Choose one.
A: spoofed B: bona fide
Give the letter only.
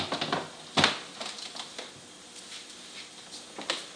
B